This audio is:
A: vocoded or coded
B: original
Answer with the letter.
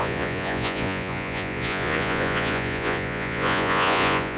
A